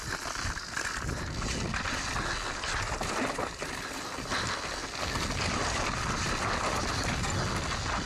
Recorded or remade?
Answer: recorded